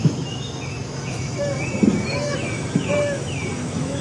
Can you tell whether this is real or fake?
fake